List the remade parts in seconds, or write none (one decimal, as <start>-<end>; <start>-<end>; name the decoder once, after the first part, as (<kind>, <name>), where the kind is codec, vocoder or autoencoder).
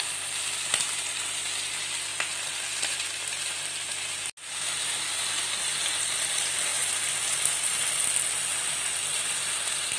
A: none